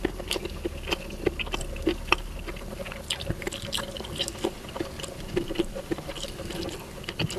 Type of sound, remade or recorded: recorded